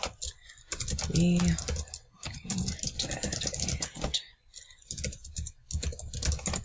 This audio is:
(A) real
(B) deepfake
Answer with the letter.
A